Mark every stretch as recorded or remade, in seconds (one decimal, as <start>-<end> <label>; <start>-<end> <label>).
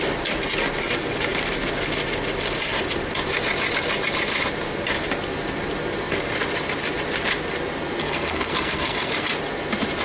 0.0-8.0 recorded; 8.0-9.3 remade; 9.3-10.0 recorded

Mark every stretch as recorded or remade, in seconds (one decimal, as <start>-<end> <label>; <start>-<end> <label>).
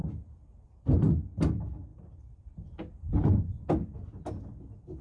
0.0-1.2 remade; 1.2-1.9 recorded; 1.9-3.9 remade; 3.9-5.0 recorded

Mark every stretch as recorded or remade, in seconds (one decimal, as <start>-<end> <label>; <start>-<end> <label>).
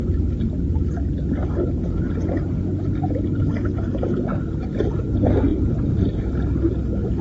0.0-5.5 recorded; 5.5-6.2 remade; 6.2-7.2 recorded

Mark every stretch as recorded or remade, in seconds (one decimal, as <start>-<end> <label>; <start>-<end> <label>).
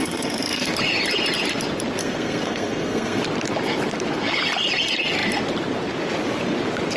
0.0-0.7 remade; 0.7-2.0 recorded; 2.0-3.2 remade; 3.2-7.0 recorded